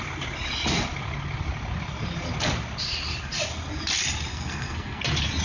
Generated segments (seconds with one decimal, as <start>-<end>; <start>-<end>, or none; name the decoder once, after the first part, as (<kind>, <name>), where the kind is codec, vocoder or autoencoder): 4.3-5.0 (codec, SNAC)